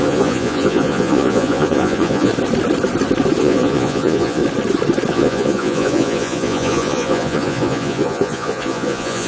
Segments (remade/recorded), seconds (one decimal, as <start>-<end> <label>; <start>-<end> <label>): 0.0-2.3 remade; 2.3-3.4 recorded; 3.4-4.4 remade; 4.4-5.1 recorded; 5.1-9.3 remade